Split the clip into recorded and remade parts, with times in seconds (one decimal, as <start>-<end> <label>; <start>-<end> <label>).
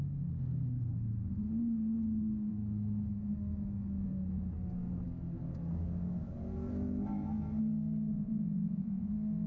0.0-8.1 recorded; 8.1-9.1 remade; 9.1-9.5 recorded